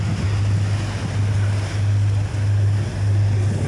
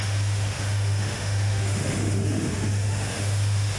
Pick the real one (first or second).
first